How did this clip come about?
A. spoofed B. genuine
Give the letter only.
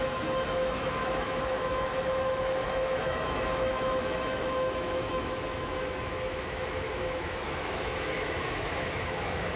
A